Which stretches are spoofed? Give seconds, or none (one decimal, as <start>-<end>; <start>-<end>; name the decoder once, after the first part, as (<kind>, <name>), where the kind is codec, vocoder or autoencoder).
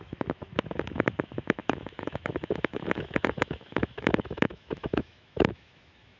0.0-6.2 (autoencoder, DAC-VAE)